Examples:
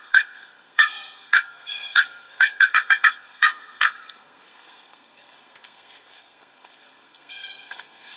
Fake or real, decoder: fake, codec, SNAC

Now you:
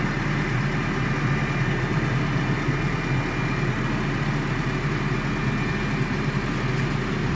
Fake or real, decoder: real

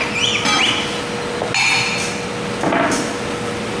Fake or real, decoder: real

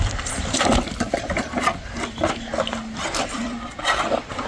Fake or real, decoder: fake, vocoder, BigVGAN v2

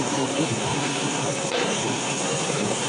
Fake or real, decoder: fake, codec, SNAC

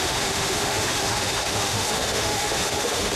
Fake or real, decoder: fake, autoencoder, DAC-VAE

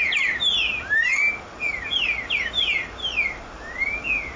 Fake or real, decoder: real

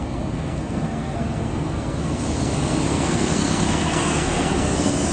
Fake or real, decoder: fake, codec, SNAC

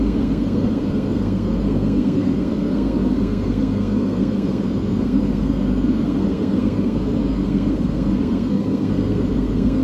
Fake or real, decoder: fake, codec, SNAC